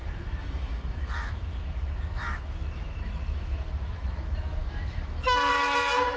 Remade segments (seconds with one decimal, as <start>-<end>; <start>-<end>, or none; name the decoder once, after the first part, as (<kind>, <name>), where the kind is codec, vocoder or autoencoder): 0.0-6.2 (autoencoder, DAC-VAE)